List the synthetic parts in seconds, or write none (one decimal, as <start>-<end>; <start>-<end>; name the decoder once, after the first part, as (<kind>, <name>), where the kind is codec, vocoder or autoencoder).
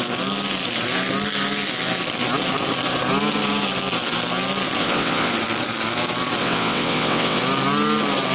4.8-5.3 (vocoder, WaveNeXt); 6.4-7.4